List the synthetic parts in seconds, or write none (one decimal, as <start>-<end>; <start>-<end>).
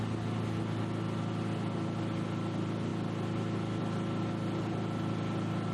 none